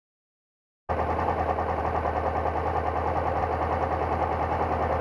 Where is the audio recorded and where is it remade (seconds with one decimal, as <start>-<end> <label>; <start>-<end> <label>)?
0.0-5.0 recorded